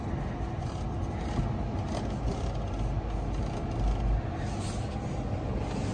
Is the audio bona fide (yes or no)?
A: yes